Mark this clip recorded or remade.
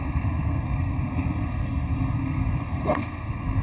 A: remade